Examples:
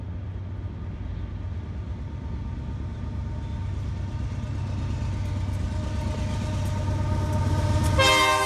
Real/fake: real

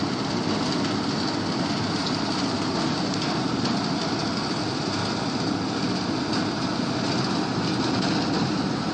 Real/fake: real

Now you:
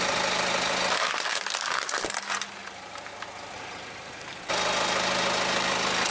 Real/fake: real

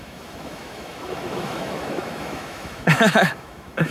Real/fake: fake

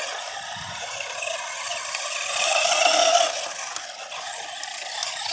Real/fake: real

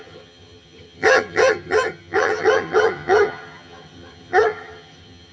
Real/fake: fake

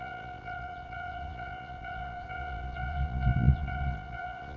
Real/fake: fake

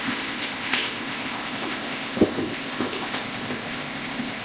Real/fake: fake